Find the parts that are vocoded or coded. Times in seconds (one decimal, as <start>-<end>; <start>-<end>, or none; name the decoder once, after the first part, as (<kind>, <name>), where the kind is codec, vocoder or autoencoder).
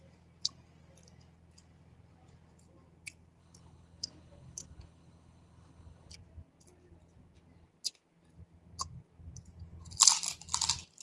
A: 3.4-6.1 (codec, HILCodec)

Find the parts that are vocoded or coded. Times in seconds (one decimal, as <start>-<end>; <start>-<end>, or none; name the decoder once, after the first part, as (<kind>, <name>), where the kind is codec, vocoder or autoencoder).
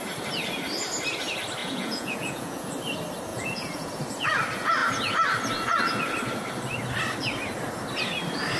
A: 1.6-2.7 (vocoder, Vocos); 3.3-3.9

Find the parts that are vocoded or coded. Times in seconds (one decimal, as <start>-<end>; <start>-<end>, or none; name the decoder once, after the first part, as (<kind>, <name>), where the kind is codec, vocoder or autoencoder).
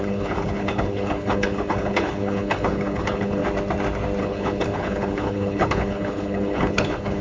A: 0.0-3.4 (codec, HILCodec); 4.2-7.2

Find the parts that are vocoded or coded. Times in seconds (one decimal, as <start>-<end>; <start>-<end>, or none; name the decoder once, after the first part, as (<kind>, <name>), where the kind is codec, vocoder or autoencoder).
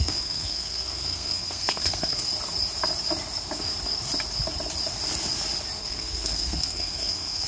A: 0.0-2.3 (codec, SNAC); 5.8-7.5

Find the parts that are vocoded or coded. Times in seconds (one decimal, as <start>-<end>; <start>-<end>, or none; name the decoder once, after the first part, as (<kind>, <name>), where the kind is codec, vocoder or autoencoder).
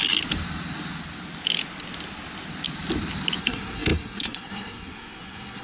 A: 3.4-5.6 (codec, SNAC)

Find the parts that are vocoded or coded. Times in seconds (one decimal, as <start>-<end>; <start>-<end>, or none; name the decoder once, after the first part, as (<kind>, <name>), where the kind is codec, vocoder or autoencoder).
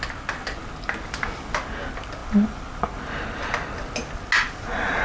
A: none